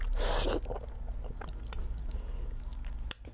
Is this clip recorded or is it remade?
recorded